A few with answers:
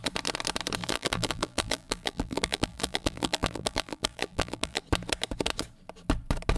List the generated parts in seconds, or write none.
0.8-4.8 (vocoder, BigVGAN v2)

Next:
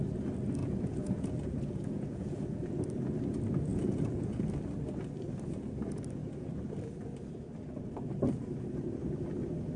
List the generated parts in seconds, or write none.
0.6-2.7 (vocoder, Vocos); 3.7-4.5

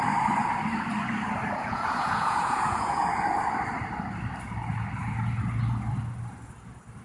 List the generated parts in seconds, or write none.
1.6-2.9 (vocoder, Vocos)

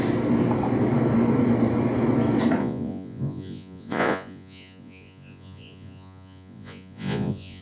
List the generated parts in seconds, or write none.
2.6-7.6 (vocoder, Vocos)